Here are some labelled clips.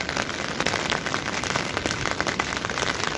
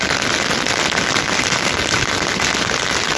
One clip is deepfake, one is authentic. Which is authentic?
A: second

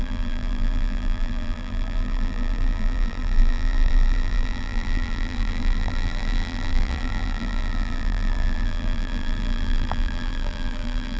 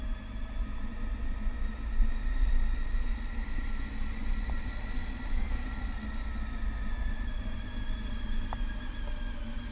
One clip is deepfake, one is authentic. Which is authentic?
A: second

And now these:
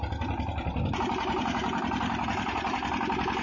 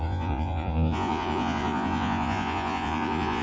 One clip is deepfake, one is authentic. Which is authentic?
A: first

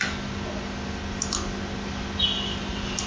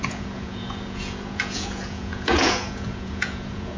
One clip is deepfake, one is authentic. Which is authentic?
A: first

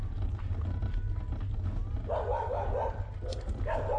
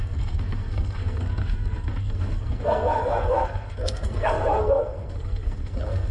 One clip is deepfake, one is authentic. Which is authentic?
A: first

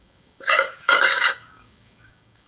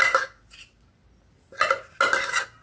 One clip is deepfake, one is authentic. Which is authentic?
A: second